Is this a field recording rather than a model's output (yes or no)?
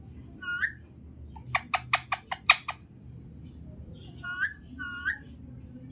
yes